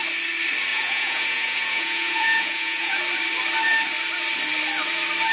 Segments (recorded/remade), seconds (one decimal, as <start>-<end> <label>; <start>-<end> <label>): 0.0-0.7 recorded; 0.7-3.0 remade; 3.0-5.3 recorded